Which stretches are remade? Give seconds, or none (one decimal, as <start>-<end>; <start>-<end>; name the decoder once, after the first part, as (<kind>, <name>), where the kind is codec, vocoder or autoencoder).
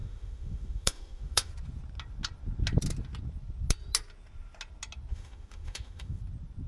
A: 0.0-1.5 (autoencoder, DAC-VAE); 5.1-6.2